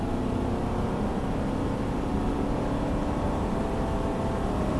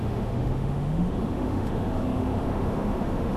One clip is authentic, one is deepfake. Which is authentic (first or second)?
first